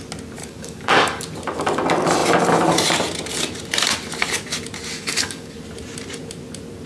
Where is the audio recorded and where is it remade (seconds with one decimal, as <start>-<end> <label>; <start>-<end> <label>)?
0.0-0.4 recorded; 0.4-1.2 remade; 1.2-4.9 recorded; 4.9-5.6 remade; 5.6-6.9 recorded

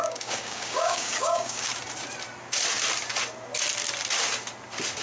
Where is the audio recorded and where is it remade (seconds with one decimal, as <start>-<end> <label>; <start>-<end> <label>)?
0.0-1.7 remade; 1.7-5.0 recorded

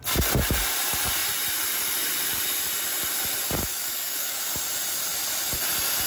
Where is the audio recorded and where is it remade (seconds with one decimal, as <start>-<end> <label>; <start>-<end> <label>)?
0.0-3.7 recorded; 3.7-4.4 remade; 4.4-6.1 recorded